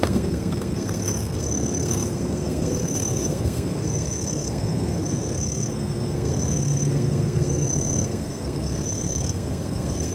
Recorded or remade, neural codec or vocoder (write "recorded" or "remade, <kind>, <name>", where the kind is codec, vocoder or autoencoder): remade, codec, SNAC